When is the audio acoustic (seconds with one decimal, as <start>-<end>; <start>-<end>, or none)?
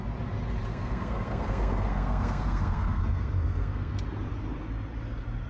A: 0.0-0.7; 4.0-5.5